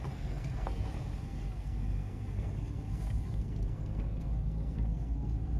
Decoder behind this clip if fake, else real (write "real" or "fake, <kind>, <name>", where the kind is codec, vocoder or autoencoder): fake, codec, SNAC